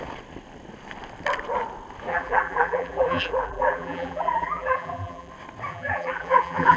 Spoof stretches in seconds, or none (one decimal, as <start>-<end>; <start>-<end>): 2.1-5.3; 5.7-6.8